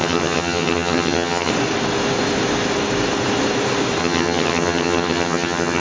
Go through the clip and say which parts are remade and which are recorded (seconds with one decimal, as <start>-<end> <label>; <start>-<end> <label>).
0.0-1.5 remade; 1.5-4.0 recorded; 4.0-5.8 remade